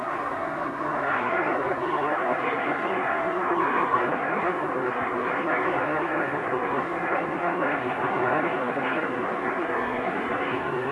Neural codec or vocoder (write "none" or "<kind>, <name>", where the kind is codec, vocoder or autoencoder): codec, SNAC